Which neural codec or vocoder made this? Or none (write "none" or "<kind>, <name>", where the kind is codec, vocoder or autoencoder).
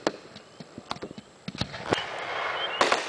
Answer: none